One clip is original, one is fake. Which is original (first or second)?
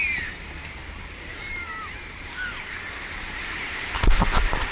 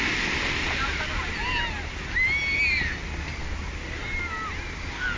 second